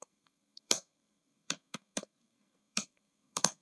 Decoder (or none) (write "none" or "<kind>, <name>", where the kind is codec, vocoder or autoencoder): codec, SNAC